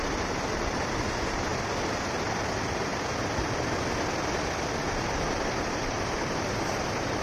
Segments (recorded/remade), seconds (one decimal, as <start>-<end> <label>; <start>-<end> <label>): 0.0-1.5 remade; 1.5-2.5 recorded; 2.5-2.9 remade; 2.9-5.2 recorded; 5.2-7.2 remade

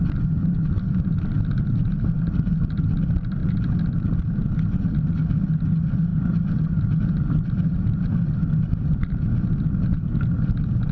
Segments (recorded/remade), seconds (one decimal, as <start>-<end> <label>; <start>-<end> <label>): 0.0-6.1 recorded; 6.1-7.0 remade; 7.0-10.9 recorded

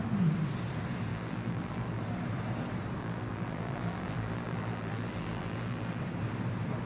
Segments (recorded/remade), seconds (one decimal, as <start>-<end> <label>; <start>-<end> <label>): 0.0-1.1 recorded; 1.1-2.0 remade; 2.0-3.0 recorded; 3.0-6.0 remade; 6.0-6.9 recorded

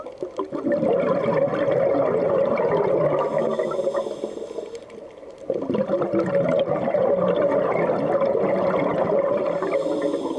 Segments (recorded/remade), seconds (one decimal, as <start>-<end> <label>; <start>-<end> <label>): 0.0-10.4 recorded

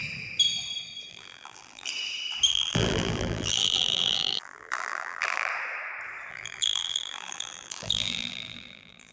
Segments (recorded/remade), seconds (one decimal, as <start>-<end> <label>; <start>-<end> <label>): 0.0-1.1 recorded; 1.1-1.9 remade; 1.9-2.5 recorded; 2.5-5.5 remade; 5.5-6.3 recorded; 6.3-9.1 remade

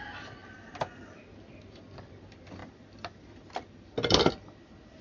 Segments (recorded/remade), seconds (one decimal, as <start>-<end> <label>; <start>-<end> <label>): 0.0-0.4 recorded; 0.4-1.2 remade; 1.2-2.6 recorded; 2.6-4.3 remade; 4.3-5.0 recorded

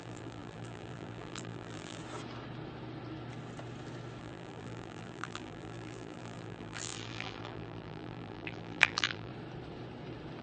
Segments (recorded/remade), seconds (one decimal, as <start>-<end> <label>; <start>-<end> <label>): 0.0-2.0 remade; 2.0-4.2 recorded; 4.2-9.3 remade; 9.3-10.4 recorded